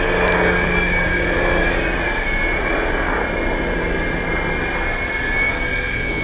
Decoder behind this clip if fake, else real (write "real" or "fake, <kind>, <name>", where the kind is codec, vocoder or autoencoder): real